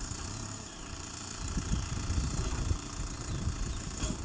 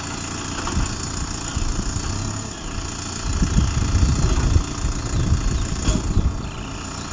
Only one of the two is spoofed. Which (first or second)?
first